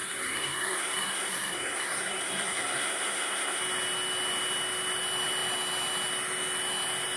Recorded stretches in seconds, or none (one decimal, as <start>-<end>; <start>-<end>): 3.6-7.2